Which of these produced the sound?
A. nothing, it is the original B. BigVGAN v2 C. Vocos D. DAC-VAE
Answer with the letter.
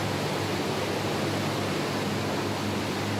A